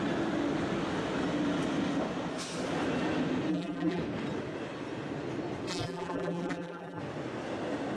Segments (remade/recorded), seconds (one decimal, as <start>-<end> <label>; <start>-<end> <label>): 0.0-3.5 recorded; 3.5-4.0 remade; 4.0-5.7 recorded; 5.7-7.0 remade; 7.0-8.0 recorded